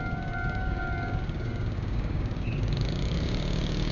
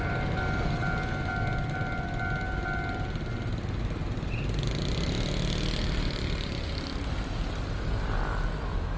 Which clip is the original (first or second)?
second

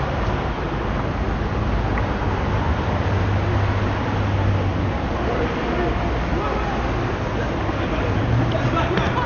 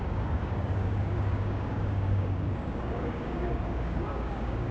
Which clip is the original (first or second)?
first